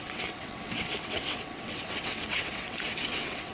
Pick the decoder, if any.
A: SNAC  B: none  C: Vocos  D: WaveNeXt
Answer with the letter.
D